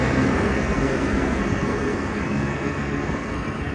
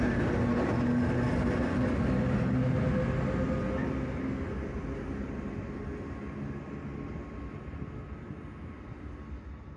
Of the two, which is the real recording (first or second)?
second